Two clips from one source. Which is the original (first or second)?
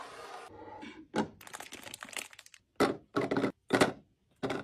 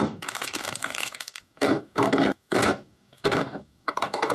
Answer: first